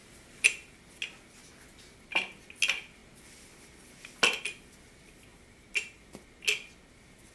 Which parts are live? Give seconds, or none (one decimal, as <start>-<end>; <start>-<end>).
0.8-5.3; 6.0-7.3